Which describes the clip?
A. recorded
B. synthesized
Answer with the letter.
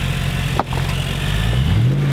A